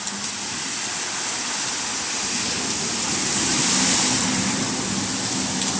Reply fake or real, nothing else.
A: real